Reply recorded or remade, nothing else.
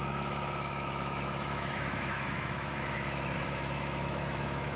remade